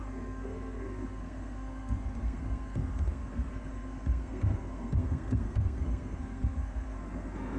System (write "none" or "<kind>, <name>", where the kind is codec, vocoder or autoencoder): codec, SNAC